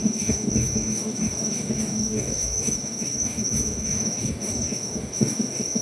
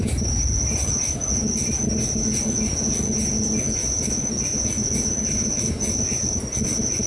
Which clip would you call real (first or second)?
second